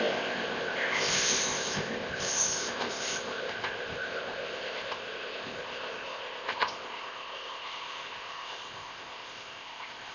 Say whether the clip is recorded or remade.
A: remade